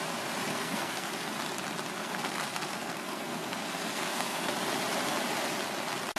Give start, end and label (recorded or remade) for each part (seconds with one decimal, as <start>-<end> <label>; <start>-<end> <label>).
0.0-0.5 recorded; 0.5-1.1 remade; 1.1-2.0 recorded; 2.0-4.5 remade; 4.5-6.2 recorded